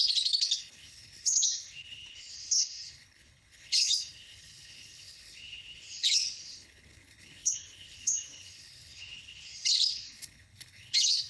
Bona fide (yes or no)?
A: no